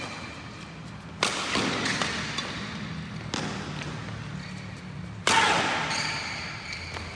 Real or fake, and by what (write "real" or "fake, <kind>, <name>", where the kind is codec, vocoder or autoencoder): real